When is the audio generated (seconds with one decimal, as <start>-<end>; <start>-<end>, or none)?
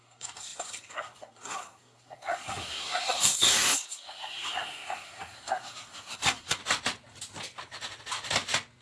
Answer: 0.0-6.6